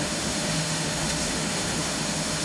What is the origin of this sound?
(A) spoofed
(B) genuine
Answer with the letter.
A